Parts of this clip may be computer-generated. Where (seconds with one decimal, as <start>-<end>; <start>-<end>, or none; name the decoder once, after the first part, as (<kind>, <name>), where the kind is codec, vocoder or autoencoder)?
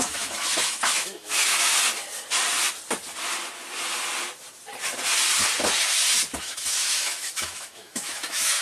0.0-1.7 (autoencoder, DAC-VAE); 6.4-8.6